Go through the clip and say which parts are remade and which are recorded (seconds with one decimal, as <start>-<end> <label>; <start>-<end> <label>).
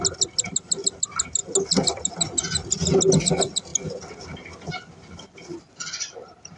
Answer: 0.0-5.5 recorded; 5.5-6.1 remade; 6.1-6.6 recorded